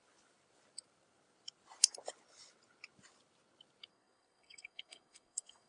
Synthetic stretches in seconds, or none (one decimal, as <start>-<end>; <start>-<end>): 3.9-5.7